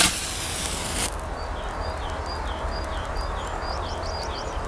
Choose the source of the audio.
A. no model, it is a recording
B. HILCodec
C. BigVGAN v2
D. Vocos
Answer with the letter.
A